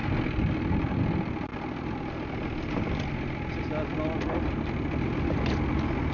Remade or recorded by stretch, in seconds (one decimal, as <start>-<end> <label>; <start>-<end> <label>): 0.0-6.1 recorded